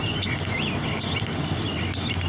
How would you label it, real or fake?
real